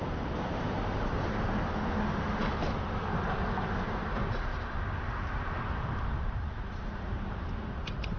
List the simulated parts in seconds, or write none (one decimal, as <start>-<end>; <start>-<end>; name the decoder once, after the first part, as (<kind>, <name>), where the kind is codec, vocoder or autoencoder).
4.5-8.2 (vocoder, BigVGAN v2)